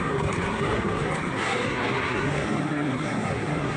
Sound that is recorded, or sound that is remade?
remade